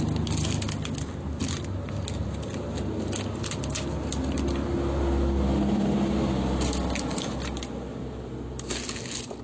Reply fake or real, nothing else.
real